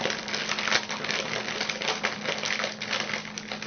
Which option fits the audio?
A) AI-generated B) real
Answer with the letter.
B